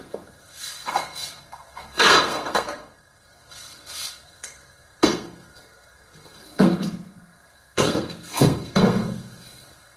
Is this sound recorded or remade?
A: remade